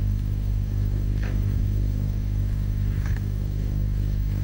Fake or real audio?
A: fake